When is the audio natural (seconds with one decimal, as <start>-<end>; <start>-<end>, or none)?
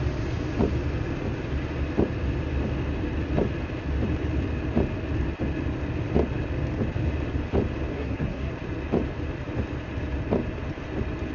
0.0-7.9; 8.5-11.3